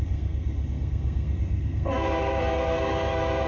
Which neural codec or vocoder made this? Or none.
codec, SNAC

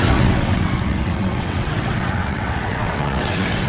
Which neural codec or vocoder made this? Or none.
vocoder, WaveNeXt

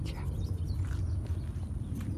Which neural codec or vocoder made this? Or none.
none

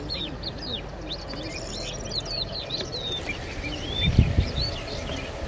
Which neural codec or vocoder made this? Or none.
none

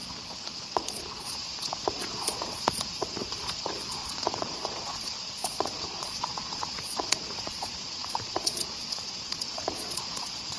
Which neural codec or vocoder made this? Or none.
vocoder, Vocos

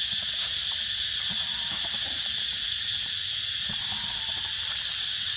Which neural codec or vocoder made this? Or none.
none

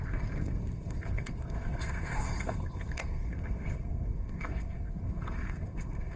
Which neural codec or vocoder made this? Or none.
codec, SNAC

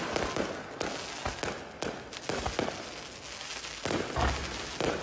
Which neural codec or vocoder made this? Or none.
none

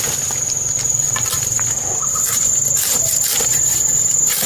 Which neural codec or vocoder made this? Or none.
none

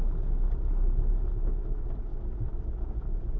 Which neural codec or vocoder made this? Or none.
none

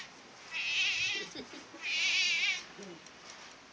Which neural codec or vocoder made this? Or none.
none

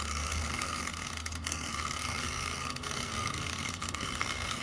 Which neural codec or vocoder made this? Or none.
codec, SNAC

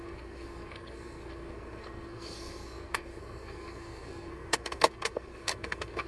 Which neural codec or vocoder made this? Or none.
codec, SNAC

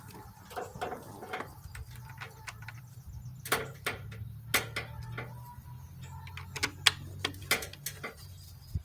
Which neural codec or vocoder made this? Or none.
none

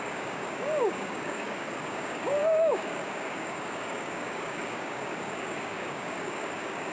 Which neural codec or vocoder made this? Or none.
codec, DAC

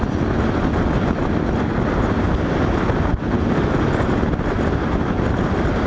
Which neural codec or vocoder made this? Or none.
none